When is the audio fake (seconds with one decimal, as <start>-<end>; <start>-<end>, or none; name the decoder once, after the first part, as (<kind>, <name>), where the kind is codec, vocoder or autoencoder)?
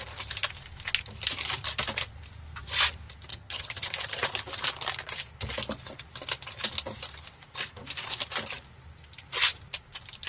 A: 3.3-3.9 (vocoder, HiFi-GAN)